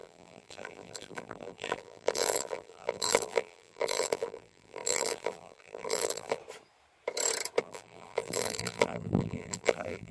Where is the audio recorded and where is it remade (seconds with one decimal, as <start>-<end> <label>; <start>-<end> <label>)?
0.0-6.4 remade; 6.4-7.6 recorded; 7.6-10.1 remade